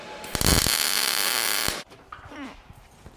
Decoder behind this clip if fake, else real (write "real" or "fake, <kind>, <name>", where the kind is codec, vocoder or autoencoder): real